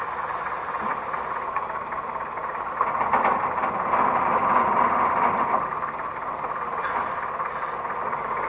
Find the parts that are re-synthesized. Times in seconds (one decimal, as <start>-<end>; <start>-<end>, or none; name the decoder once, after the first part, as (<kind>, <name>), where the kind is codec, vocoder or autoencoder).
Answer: none